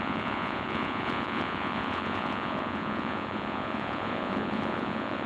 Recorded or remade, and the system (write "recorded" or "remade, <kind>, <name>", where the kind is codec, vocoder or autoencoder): remade, vocoder, Vocos